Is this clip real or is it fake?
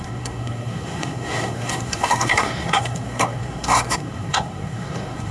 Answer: fake